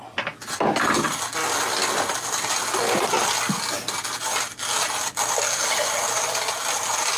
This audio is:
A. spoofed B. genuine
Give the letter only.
B